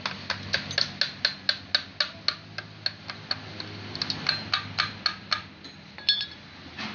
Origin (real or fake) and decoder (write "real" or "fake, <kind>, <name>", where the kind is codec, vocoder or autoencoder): real